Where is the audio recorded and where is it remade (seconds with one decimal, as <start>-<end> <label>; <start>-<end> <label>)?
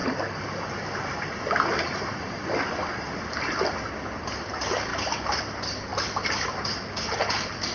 0.0-3.1 remade; 3.1-7.7 recorded